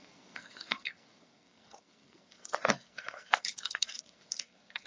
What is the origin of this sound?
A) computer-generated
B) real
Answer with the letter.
A